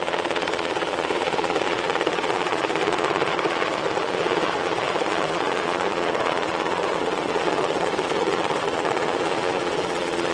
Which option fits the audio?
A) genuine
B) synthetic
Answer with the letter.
B